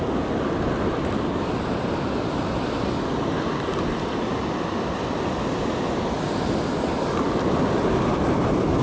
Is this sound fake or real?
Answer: real